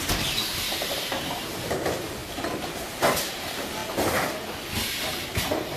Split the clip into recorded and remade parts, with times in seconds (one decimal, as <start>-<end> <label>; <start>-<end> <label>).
0.0-5.8 recorded